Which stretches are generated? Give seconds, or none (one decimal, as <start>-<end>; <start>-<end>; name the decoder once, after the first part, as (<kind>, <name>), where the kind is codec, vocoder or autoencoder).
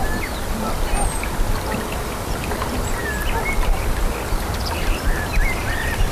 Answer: none